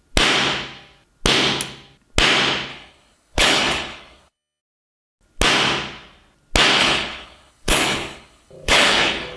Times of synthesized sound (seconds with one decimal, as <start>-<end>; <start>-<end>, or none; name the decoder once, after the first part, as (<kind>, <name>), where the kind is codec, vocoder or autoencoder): 2.7-4.6 (codec, HILCodec); 6.8-9.4